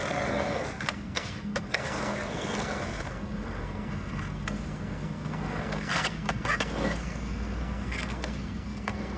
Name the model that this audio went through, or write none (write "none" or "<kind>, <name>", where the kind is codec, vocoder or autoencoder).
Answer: codec, SNAC